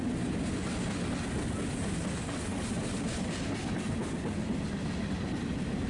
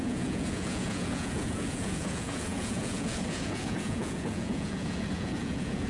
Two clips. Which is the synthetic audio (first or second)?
second